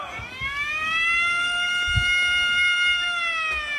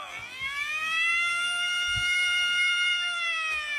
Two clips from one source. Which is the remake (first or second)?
second